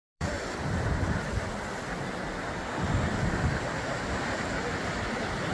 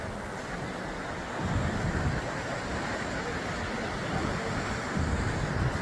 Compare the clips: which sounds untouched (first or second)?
second